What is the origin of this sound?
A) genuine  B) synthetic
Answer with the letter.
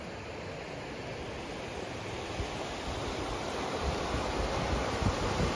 A